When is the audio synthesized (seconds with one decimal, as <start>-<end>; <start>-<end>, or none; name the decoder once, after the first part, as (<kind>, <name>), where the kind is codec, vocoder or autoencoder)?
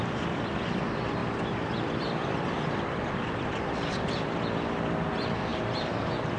none